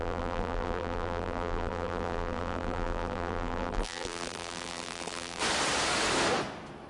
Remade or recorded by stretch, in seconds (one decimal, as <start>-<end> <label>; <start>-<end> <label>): 0.0-5.4 remade; 5.4-6.9 recorded